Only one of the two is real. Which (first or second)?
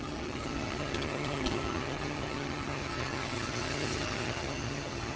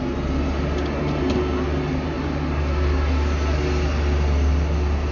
second